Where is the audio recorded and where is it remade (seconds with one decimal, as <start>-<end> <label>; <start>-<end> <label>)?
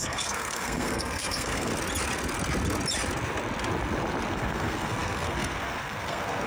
0.0-1.7 remade; 1.7-4.3 recorded; 4.3-6.5 remade